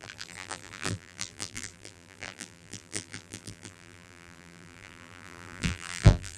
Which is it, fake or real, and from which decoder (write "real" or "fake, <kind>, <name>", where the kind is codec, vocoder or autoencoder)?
fake, vocoder, BigVGAN v2